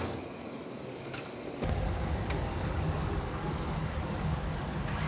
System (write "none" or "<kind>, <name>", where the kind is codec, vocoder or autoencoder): codec, DAC